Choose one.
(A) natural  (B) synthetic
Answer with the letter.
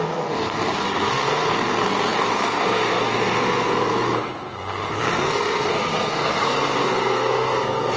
B